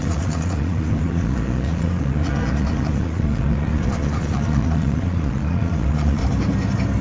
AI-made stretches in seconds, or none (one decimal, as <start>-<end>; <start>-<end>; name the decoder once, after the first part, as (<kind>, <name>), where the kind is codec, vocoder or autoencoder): 0.0-6.2 (vocoder, Vocos)